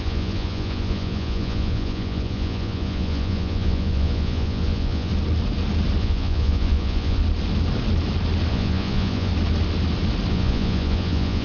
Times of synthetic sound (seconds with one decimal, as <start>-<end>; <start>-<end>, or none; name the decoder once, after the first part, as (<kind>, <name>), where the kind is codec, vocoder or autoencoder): 0.0-5.1 (vocoder, Vocos); 6.0-7.2; 8.5-9.3; 10.3-11.4